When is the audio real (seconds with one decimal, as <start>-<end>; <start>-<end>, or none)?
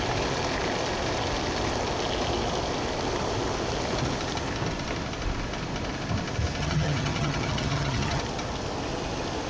0.0-6.6; 8.2-9.5